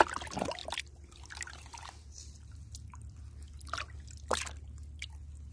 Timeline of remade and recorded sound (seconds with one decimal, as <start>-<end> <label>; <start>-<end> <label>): 0.0-5.5 recorded